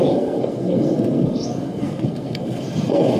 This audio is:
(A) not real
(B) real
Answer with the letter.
A